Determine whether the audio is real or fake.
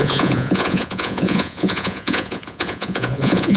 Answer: fake